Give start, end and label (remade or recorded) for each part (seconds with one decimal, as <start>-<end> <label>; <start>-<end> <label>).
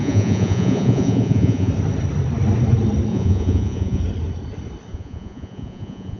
0.0-1.7 remade; 1.7-3.1 recorded; 3.1-4.0 remade; 4.0-4.9 recorded; 4.9-6.2 remade